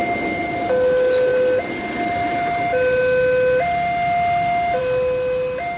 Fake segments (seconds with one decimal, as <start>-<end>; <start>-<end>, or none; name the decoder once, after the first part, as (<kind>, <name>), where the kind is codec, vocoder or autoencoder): none